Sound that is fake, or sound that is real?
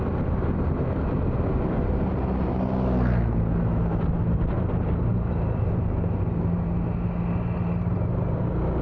real